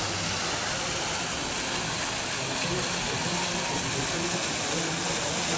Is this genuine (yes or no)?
yes